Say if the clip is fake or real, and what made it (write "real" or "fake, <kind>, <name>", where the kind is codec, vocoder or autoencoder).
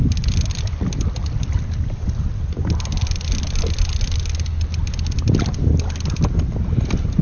real